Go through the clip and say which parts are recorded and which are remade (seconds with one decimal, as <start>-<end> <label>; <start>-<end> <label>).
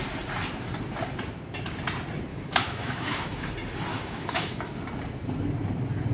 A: 0.0-2.3 recorded; 2.3-3.5 remade; 3.5-3.9 recorded; 3.9-4.7 remade; 4.7-6.1 recorded